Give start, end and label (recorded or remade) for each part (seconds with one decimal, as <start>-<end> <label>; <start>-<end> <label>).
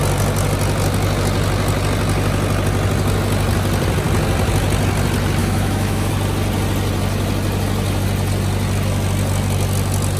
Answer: 0.0-5.4 recorded; 5.4-6.1 remade; 6.1-10.2 recorded